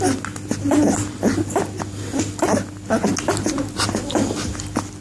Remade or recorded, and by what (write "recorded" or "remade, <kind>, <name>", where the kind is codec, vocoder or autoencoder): recorded